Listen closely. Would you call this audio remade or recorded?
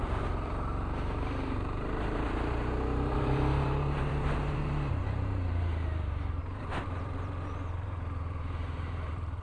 remade